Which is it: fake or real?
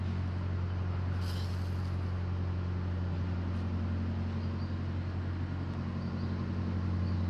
real